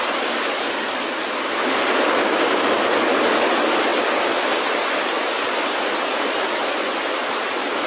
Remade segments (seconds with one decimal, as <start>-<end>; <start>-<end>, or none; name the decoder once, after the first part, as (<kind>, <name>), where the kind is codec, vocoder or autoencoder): 2.2-2.8 (codec, DAC)